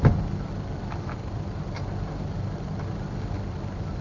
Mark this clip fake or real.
real